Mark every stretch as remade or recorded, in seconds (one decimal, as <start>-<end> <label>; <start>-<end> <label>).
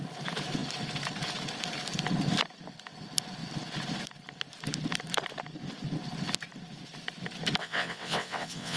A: 0.0-7.6 recorded; 7.6-8.8 remade